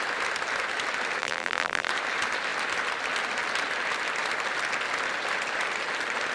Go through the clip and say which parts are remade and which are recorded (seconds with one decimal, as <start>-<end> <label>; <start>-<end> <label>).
0.0-1.2 recorded; 1.2-1.9 remade; 1.9-6.3 recorded